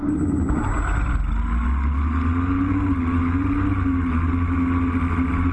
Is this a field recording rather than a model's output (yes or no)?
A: yes